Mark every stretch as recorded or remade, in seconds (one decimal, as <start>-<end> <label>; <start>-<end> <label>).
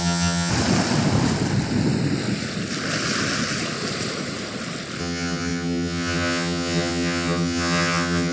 0.0-0.5 remade; 0.5-5.0 recorded; 5.0-8.3 remade